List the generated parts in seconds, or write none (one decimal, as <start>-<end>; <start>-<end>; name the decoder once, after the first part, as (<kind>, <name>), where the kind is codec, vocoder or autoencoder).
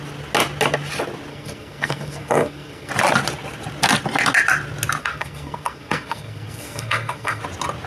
1.3-2.9 (codec, SNAC); 5.0-7.4